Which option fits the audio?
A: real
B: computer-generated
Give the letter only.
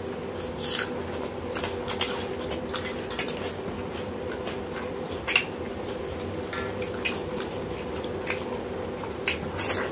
A